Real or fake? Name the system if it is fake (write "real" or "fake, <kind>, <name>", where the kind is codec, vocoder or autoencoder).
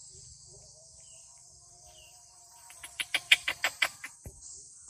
fake, vocoder, BigVGAN v2